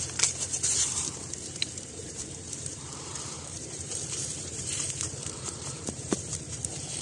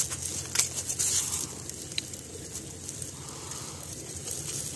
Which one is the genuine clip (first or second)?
second